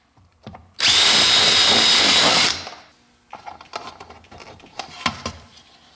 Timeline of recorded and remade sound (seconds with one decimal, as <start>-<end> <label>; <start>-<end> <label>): 0.0-0.6 remade; 0.6-4.2 recorded; 4.2-6.0 remade